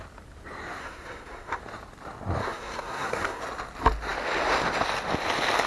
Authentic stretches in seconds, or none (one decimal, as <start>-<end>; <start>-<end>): 0.0-0.8; 1.6-2.4; 3.4-5.7